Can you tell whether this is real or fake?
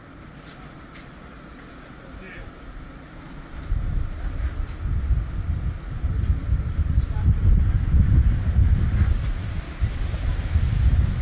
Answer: real